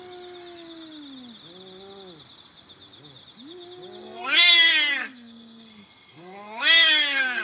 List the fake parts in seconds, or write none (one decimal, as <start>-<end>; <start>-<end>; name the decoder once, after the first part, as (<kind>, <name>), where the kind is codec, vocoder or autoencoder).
4.0-7.4 (codec, SNAC)